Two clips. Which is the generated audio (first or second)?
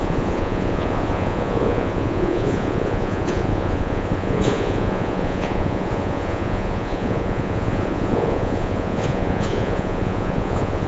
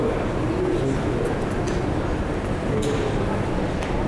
first